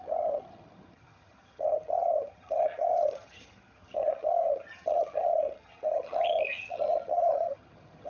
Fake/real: fake